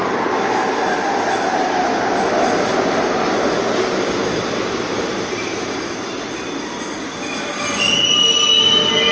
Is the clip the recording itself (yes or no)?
yes